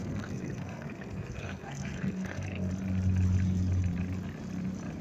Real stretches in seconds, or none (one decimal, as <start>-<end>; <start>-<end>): 2.7-5.0